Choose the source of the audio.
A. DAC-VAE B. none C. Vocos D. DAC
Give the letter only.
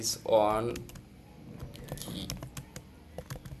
B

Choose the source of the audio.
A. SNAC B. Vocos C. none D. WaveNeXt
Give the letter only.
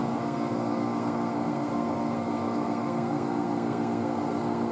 A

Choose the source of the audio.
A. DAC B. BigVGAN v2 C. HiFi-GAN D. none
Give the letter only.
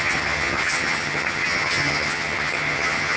C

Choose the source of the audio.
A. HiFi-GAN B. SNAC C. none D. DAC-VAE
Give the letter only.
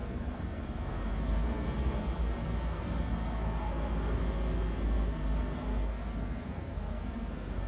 B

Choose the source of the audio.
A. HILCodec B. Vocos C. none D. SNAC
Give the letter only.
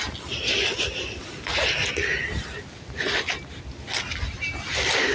C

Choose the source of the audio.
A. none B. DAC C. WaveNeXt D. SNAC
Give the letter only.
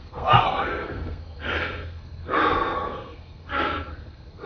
D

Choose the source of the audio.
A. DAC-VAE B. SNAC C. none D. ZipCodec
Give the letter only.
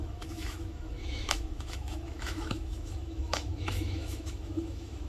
A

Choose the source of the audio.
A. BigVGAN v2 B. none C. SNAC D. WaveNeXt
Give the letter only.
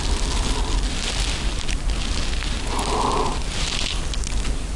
B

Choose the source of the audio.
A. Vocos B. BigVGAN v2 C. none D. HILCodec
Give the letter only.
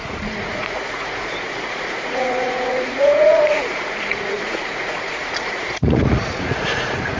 A